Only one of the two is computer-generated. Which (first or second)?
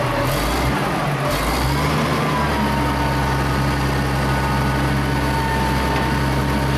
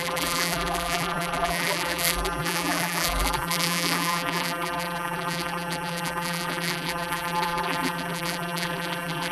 second